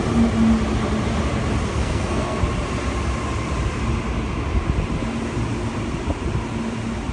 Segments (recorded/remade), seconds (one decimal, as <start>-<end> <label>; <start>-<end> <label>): 0.0-1.7 recorded; 1.7-2.4 remade; 2.4-7.1 recorded